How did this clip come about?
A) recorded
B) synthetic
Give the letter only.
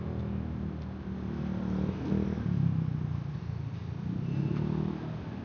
A